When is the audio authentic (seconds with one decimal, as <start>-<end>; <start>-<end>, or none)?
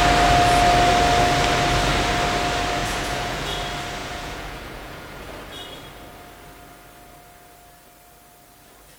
0.0-2.8; 3.6-4.0; 5.3-9.0